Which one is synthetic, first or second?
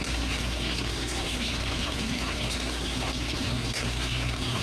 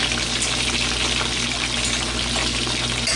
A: first